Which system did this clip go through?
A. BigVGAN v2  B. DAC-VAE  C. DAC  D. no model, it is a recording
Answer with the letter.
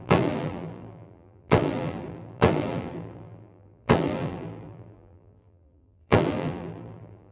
A